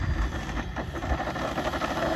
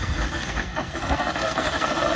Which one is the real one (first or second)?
first